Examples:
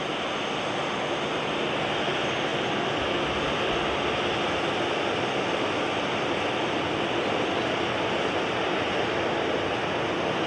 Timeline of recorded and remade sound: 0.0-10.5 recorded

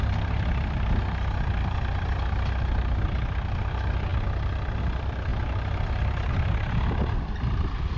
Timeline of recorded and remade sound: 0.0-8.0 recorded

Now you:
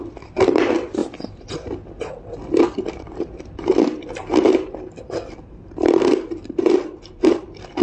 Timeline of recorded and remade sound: 0.0-7.8 remade

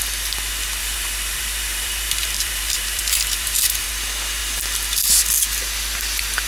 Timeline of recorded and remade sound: 0.0-0.8 recorded; 0.8-3.9 remade; 3.9-6.5 recorded

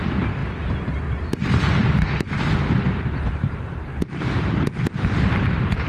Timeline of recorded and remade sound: 0.0-0.4 remade; 0.4-1.8 recorded; 1.8-3.9 remade; 3.9-5.9 recorded

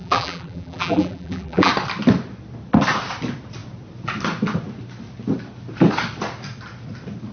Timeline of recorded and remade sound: 0.0-1.7 remade; 1.7-7.3 recorded

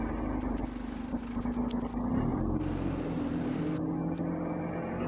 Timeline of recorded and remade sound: 0.0-2.3 recorded; 2.3-3.6 remade; 3.6-5.1 recorded

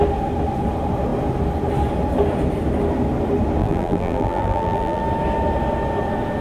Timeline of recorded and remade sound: 0.0-3.6 recorded; 3.6-5.0 remade; 5.0-6.4 recorded